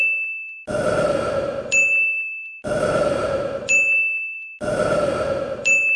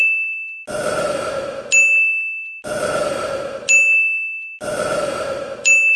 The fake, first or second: first